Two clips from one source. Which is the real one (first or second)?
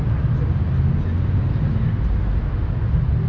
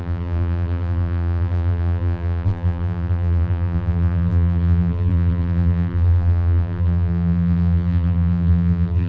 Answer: first